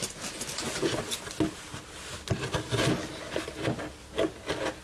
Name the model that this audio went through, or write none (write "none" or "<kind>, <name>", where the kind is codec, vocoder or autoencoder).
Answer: none